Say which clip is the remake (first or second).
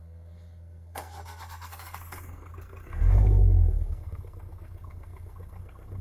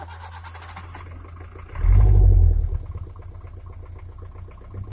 first